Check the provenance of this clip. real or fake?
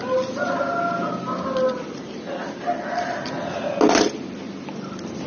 real